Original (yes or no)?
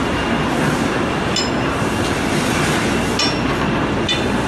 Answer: yes